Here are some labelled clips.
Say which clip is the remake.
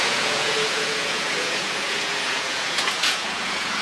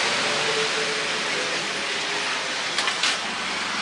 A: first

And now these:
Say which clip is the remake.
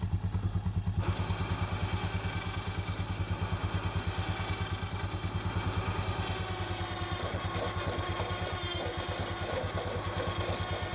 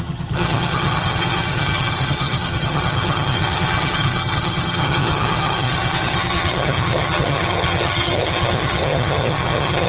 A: second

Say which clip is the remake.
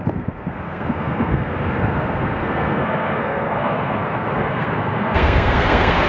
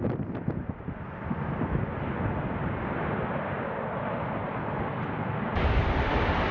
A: first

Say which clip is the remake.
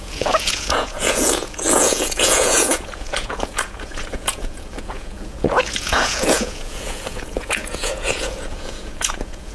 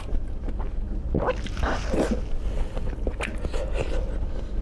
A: first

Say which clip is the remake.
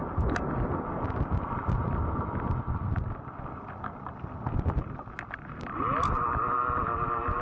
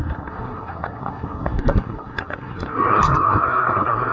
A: second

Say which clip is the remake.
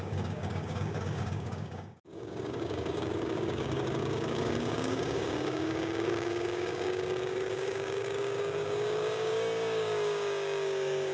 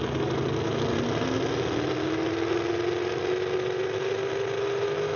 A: first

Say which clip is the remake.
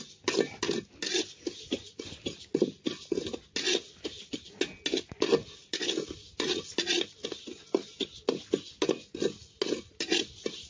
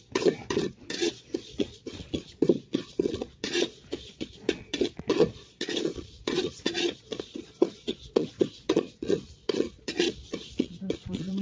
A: second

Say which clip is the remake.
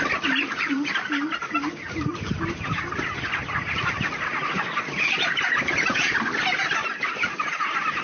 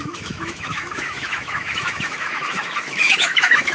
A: second